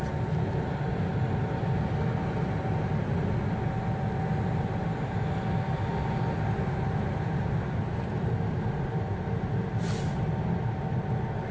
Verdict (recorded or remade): recorded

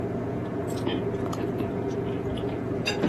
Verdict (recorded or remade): remade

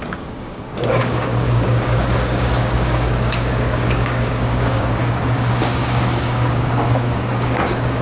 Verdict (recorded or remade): remade